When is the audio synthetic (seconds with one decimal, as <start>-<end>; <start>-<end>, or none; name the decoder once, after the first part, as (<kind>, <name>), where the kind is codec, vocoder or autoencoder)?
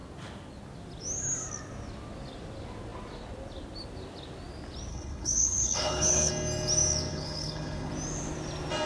4.9-6.3 (codec, HILCodec); 7.1-7.9